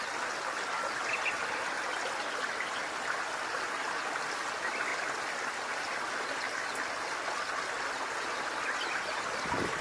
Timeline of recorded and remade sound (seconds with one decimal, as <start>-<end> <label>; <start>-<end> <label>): 0.0-9.8 recorded